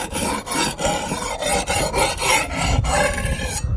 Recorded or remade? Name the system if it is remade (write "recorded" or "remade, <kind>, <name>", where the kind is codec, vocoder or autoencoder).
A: recorded